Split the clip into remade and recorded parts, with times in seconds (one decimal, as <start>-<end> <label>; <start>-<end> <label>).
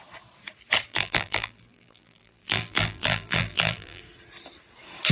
0.0-0.9 recorded; 0.9-4.0 remade; 4.0-5.1 recorded